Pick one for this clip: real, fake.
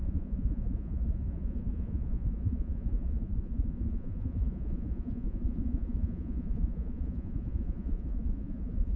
fake